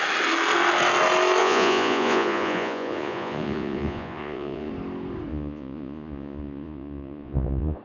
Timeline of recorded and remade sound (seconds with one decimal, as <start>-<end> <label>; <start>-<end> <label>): 0.0-1.4 recorded; 1.4-4.7 remade; 4.7-5.3 recorded; 5.3-7.8 remade